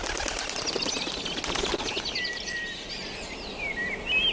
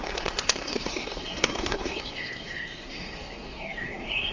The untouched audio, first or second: first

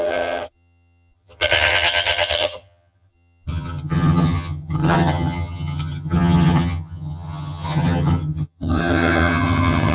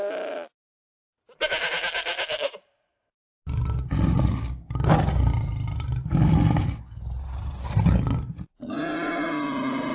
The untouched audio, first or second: second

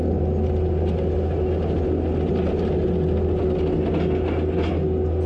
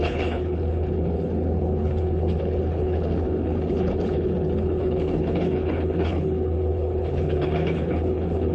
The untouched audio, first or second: first